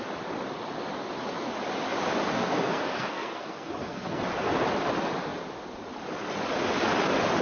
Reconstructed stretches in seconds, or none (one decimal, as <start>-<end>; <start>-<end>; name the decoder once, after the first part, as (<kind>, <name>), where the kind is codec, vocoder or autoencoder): 2.4-4.2 (codec, SNAC)